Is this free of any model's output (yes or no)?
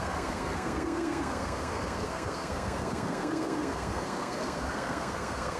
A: no